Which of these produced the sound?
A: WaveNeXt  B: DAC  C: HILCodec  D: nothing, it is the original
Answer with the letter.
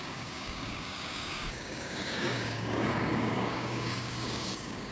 B